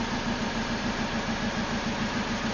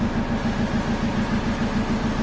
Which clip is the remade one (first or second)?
first